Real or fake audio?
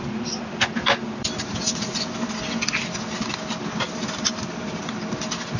real